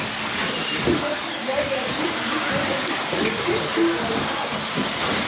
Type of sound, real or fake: real